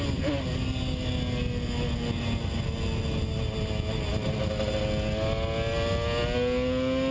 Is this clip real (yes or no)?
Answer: yes